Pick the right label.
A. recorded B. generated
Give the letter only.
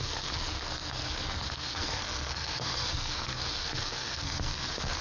B